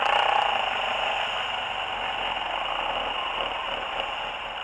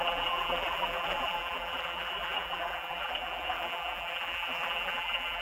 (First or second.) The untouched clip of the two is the first